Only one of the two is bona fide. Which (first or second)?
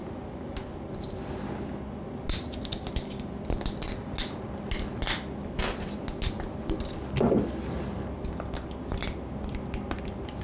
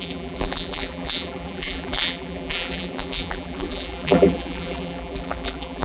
first